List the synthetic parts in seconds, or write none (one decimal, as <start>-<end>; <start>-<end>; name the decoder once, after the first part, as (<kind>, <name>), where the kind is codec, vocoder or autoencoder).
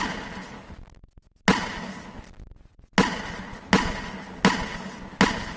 none